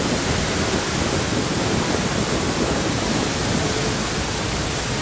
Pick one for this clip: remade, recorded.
recorded